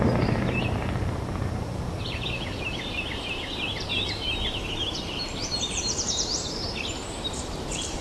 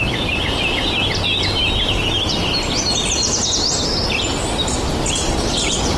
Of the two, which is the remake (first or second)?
first